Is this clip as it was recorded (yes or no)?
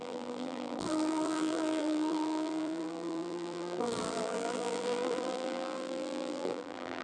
no